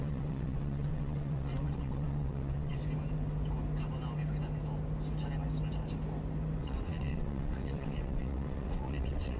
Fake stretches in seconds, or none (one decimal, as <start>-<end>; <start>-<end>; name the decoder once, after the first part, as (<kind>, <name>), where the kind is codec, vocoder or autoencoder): 0.0-2.8 (vocoder, WaveNeXt); 6.6-9.4